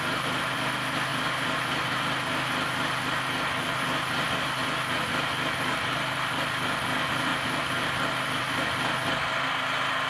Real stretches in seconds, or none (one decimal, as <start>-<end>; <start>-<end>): 0.0-10.1